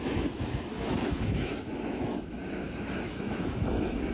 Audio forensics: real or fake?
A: fake